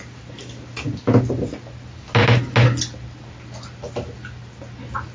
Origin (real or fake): real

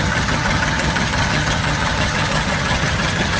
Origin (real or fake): fake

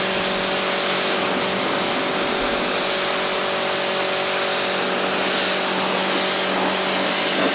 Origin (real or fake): real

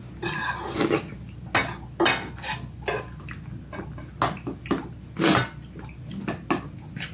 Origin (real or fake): real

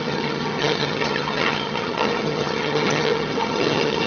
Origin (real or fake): fake